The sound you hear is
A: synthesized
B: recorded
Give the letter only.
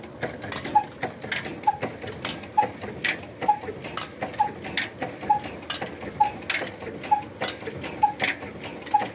B